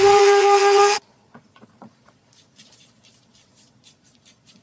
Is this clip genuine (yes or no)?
no